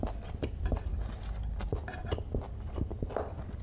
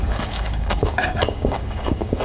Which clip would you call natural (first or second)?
first